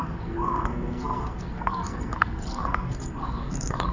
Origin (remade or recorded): remade